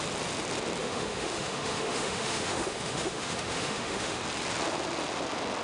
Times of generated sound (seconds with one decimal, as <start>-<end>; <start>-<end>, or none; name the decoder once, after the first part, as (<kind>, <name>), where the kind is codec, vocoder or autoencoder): 0.8-4.2 (autoencoder, DAC-VAE)